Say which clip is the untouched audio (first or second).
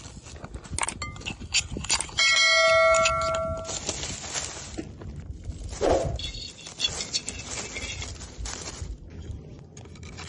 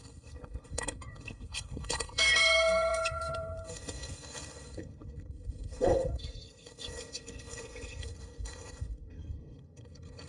first